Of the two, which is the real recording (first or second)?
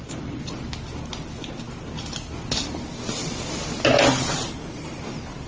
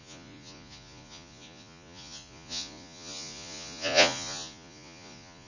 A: first